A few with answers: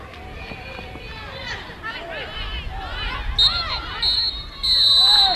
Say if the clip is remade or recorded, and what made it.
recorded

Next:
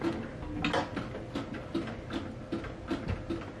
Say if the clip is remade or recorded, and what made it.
recorded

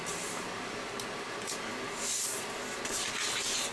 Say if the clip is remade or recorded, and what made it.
recorded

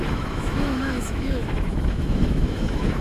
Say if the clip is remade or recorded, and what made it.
remade, autoencoder, DAC-VAE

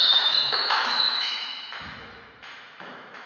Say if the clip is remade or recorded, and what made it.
remade, autoencoder, DAC-VAE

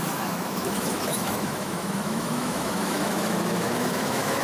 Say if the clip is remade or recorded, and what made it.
remade, autoencoder, DAC-VAE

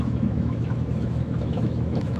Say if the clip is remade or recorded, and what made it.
remade, autoencoder, DAC-VAE